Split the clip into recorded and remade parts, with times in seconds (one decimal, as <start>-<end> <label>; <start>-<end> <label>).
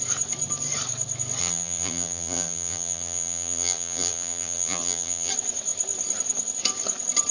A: 0.0-1.4 recorded; 1.4-5.3 remade; 5.3-7.3 recorded